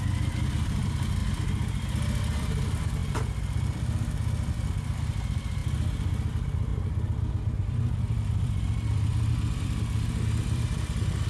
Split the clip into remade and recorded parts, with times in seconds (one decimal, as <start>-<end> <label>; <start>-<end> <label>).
0.0-1.2 remade; 1.2-2.2 recorded; 2.2-5.6 remade; 5.6-6.3 recorded; 6.3-11.3 remade